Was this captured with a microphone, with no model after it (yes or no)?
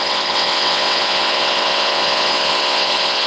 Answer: no